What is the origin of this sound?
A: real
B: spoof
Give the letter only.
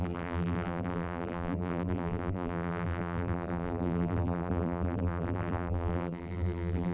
B